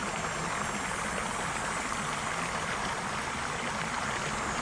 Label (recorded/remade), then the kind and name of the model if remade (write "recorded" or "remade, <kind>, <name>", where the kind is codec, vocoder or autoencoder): recorded